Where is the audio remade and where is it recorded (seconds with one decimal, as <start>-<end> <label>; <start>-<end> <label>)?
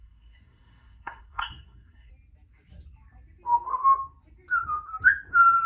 0.0-2.1 remade; 2.1-5.7 recorded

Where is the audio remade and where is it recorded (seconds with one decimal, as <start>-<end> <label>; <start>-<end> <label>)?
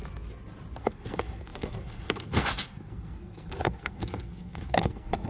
0.0-0.8 recorded; 0.8-5.3 remade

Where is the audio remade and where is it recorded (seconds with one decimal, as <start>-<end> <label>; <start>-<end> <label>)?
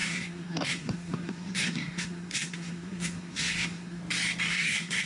0.0-4.0 remade; 4.0-4.5 recorded; 4.5-5.1 remade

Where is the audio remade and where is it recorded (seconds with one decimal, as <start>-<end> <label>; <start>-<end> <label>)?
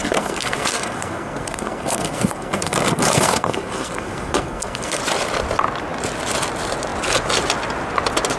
0.0-5.0 remade; 5.0-8.4 recorded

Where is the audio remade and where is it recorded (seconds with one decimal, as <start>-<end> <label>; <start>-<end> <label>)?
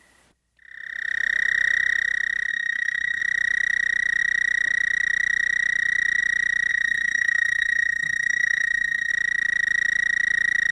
0.0-2.5 recorded; 2.5-3.2 remade; 3.2-6.7 recorded; 6.7-9.1 remade; 9.1-10.7 recorded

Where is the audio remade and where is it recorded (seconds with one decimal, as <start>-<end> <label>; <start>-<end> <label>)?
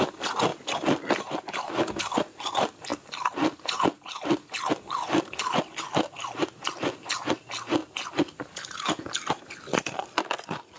0.0-10.8 recorded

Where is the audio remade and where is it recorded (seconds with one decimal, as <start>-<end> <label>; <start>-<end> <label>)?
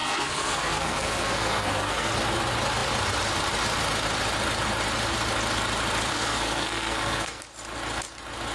0.0-2.1 remade; 2.1-6.1 recorded; 6.1-7.4 remade; 7.4-8.5 recorded